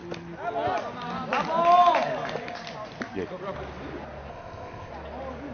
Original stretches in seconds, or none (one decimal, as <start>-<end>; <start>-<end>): 0.0-4.3; 4.9-5.5